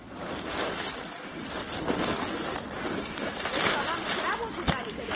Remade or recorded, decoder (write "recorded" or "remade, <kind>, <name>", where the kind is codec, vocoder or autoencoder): recorded